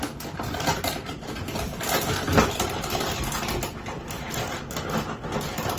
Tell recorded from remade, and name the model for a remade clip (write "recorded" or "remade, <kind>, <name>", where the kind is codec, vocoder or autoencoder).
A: recorded